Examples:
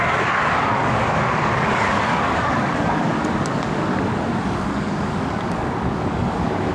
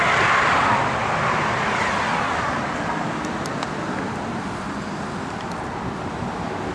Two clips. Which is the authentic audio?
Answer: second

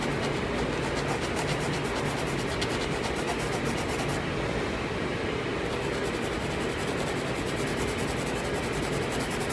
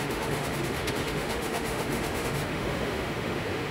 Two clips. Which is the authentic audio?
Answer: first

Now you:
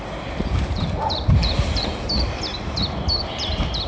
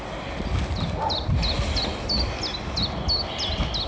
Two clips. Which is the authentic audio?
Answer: second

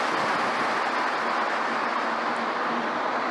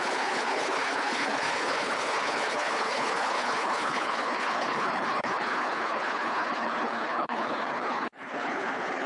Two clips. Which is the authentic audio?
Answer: first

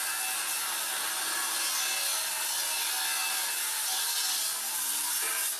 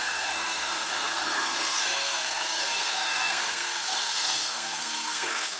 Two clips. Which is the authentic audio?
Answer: first